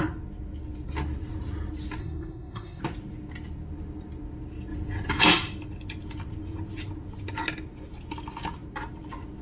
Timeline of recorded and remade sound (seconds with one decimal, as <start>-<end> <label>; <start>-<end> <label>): 0.0-2.0 recorded; 2.0-2.8 remade; 2.8-9.4 recorded